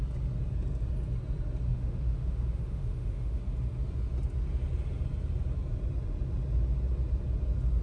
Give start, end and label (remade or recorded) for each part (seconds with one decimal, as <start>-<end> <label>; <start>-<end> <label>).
0.0-1.7 recorded; 1.7-3.4 remade; 3.4-7.8 recorded